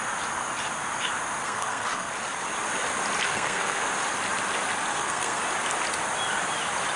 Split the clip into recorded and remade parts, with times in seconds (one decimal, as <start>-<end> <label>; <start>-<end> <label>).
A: 0.0-1.4 recorded; 1.4-2.1 remade; 2.1-3.3 recorded; 3.3-3.9 remade; 3.9-4.9 recorded; 4.9-5.4 remade; 5.4-7.0 recorded